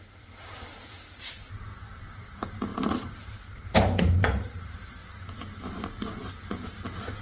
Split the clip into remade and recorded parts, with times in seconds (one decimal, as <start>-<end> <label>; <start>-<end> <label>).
0.0-5.0 remade; 5.0-7.2 recorded